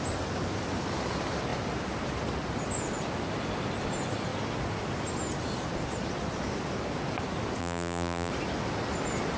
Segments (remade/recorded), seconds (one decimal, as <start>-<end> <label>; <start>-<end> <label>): 0.0-7.6 recorded; 7.6-8.3 remade; 8.3-9.4 recorded